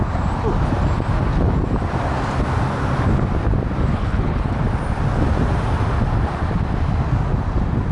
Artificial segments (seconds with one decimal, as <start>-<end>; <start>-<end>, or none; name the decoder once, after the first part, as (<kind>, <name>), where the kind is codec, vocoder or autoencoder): 3.9-4.6 (codec, HILCodec)